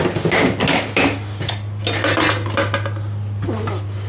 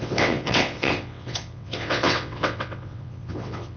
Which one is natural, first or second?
first